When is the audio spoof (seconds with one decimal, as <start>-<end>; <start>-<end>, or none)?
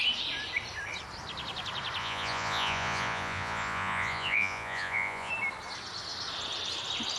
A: 2.0-5.3